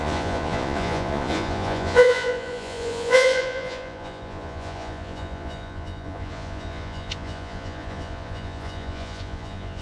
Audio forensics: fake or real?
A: fake